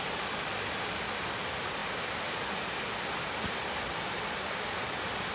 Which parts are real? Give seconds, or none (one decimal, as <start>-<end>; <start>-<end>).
0.0-5.3